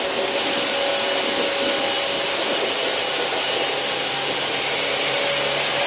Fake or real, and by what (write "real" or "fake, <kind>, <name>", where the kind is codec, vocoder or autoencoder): real